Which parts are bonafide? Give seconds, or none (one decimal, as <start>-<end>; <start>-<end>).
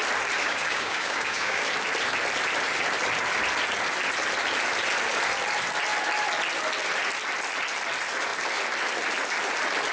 0.0-0.4; 1.6-9.9